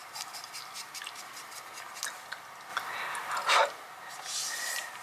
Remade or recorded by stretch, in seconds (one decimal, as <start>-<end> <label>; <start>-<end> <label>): 0.0-5.0 recorded